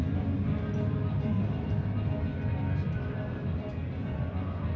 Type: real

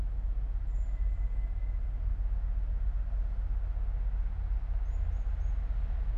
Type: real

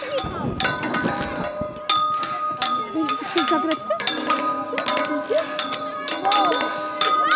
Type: real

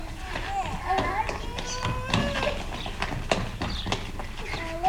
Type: real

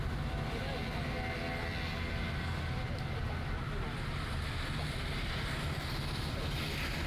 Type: real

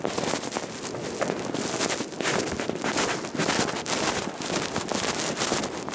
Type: real